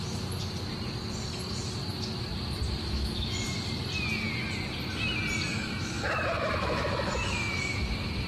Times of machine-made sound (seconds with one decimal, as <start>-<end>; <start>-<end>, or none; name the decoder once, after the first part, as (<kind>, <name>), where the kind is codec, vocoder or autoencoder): 2.8-3.4 (autoencoder, DAC-VAE); 5.7-7.6